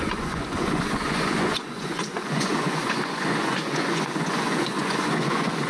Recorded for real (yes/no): no